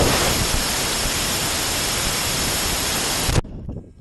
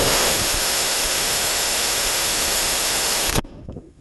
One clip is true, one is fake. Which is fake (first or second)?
second